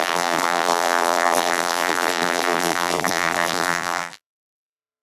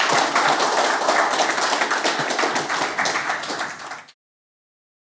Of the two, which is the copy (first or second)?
first